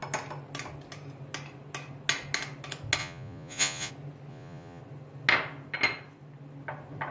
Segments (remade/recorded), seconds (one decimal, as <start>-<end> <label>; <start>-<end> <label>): 0.0-3.0 recorded; 3.0-3.9 remade; 3.9-4.3 recorded; 4.3-4.8 remade; 4.8-7.1 recorded